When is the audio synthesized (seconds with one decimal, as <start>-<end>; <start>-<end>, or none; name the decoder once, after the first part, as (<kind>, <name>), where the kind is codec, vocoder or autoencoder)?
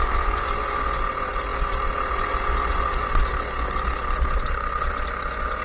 0.0-5.6 (vocoder, Vocos)